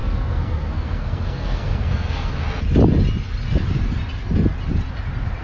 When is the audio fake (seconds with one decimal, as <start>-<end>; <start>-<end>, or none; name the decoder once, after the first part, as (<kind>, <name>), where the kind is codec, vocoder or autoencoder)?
0.0-2.3 (codec, SNAC)